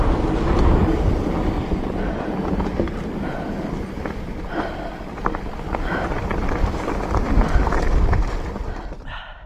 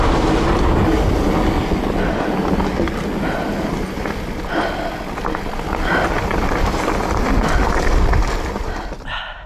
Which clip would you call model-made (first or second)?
first